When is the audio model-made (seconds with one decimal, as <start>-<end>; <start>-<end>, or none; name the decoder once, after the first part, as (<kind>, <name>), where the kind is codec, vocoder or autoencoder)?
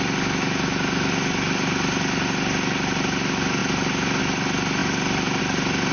none